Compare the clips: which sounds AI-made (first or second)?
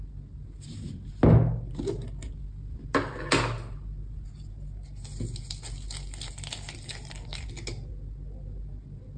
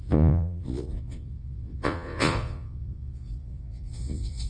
second